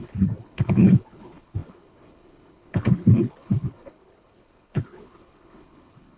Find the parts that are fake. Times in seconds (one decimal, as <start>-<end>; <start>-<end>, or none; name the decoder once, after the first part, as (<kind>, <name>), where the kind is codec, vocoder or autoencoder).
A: 0.0-6.2 (codec, HILCodec)